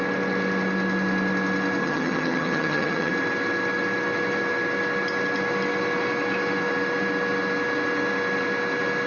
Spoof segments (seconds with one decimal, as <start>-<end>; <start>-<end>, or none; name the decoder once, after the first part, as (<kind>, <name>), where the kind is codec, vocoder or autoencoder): 1.8-3.1 (vocoder, HiFi-GAN)